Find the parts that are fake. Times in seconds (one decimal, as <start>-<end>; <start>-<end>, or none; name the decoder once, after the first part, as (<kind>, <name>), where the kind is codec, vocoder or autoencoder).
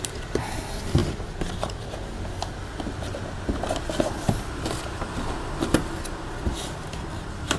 1.0-1.9 (vocoder, BigVGAN v2)